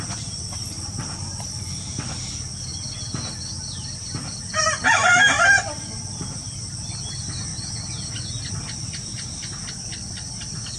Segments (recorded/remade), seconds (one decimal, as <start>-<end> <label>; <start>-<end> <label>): 0.0-2.7 remade; 2.7-3.7 recorded; 3.7-6.4 remade; 6.4-7.1 recorded; 7.1-7.5 remade; 7.5-8.5 recorded; 8.5-10.8 remade